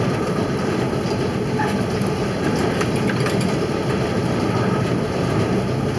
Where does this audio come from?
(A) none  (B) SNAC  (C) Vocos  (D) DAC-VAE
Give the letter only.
A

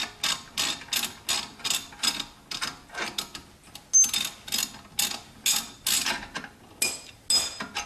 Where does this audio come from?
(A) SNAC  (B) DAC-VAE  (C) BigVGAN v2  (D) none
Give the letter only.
D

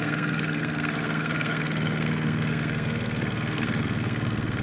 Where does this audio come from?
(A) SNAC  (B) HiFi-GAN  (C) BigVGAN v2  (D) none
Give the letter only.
A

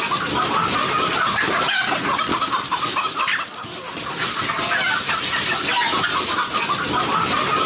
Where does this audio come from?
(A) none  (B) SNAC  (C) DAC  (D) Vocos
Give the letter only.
A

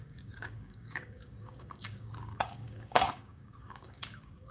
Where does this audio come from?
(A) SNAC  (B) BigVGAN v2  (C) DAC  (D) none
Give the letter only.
C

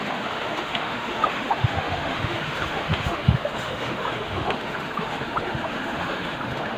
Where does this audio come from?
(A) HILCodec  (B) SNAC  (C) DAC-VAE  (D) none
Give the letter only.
C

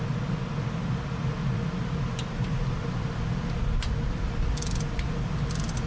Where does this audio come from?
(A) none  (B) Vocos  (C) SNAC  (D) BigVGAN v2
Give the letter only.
A